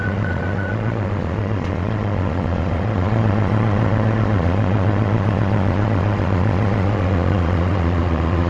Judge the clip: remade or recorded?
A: remade